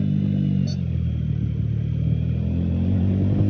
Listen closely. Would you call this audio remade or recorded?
recorded